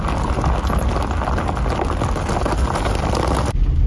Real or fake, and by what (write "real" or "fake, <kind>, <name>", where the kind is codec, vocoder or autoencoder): real